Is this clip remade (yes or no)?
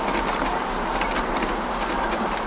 no